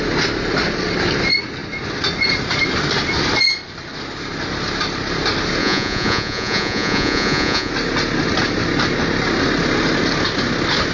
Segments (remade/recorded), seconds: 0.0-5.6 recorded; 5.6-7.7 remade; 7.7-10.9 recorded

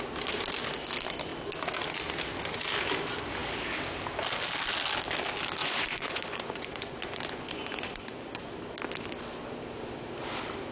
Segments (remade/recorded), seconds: 0.0-5.6 recorded; 5.6-8.5 remade; 8.5-10.7 recorded

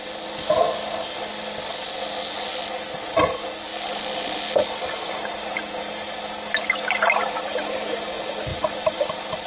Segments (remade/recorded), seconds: 0.0-9.5 recorded

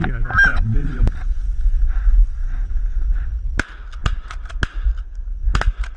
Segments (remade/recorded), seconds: 0.0-0.5 recorded; 0.5-1.0 remade; 1.0-6.0 recorded

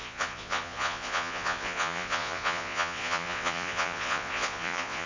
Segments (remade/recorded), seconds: 0.0-5.1 remade

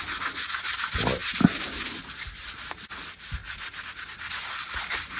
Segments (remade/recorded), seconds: 0.0-5.2 recorded

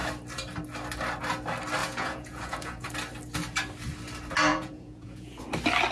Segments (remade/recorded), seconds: 0.0-1.8 recorded; 1.8-2.9 remade; 2.9-4.5 recorded; 4.5-5.4 remade; 5.4-5.9 recorded

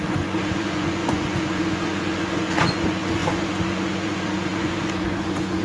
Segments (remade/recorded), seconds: 0.0-5.6 remade